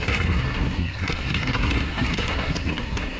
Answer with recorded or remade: remade